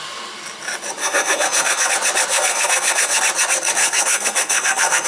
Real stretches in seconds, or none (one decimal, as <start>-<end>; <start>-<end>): 0.0-1.0; 1.9-2.3; 3.2-3.8